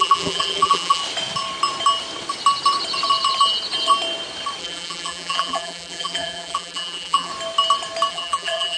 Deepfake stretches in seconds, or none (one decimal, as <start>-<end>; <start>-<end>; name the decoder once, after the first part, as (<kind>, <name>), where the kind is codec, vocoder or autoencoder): 0.0-1.0 (vocoder, BigVGAN v2); 4.6-7.3; 8.1-8.8